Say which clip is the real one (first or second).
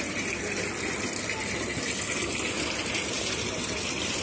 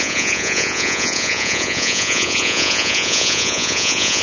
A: first